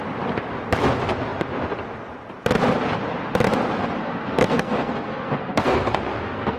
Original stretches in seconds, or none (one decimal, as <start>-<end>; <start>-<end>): 0.0-4.0